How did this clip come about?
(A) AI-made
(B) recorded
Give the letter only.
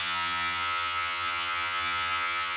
A